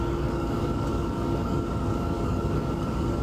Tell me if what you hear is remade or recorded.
remade